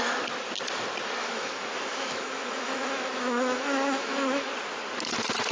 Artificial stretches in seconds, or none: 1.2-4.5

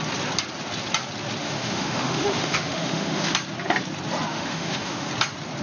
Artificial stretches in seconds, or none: 1.4-3.3; 4.3-5.1

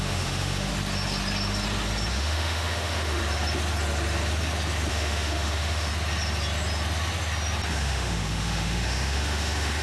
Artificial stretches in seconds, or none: 0.0-0.7; 2.1-3.2; 4.9-5.9; 7.7-9.8

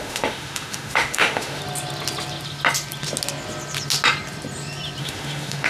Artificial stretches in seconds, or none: 0.0-1.6; 5.0-5.7

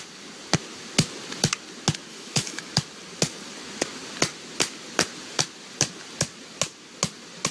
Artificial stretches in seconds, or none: 2.1-2.6